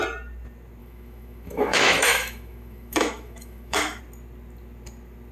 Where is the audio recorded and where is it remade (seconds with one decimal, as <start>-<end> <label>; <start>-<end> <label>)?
0.0-0.8 recorded; 0.8-4.0 remade; 4.0-5.3 recorded